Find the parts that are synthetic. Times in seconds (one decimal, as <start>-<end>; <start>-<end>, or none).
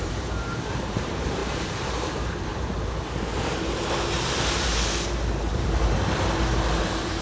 0.0-2.5; 6.8-7.2